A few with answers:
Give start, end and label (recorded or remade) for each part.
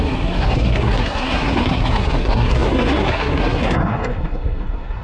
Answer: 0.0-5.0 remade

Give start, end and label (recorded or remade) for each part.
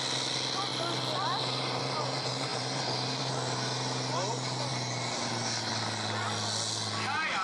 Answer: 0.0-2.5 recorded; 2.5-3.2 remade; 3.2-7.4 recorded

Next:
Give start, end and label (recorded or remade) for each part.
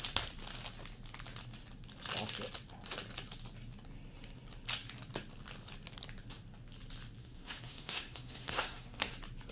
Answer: 0.0-7.2 recorded; 7.2-9.1 remade; 9.1-9.5 recorded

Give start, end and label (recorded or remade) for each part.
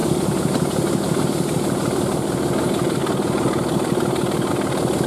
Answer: 0.0-5.1 recorded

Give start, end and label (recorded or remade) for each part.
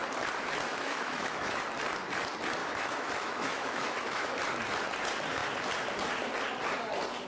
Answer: 0.0-0.7 recorded; 0.7-1.6 remade; 1.6-2.6 recorded; 2.6-4.4 remade; 4.4-7.3 recorded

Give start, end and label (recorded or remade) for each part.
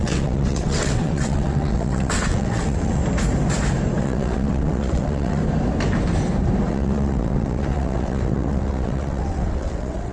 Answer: 0.0-3.0 remade; 3.0-4.0 recorded; 4.0-5.4 remade; 5.4-6.7 recorded; 6.7-10.1 remade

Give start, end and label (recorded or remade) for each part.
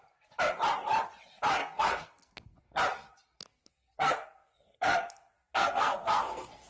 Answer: 0.0-1.6 recorded; 1.6-2.8 remade; 2.8-3.5 recorded; 3.5-6.7 remade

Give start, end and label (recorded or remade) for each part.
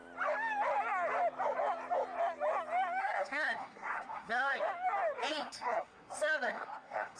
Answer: 0.0-3.0 recorded; 3.0-4.6 remade; 4.6-5.3 recorded; 5.3-7.2 remade